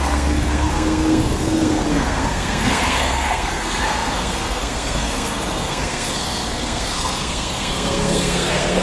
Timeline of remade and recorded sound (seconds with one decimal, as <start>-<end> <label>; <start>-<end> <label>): 0.0-8.8 remade